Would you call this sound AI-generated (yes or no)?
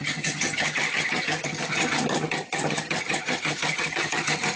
yes